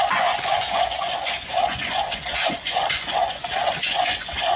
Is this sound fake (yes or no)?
yes